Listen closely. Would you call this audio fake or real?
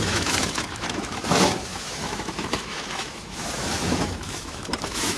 fake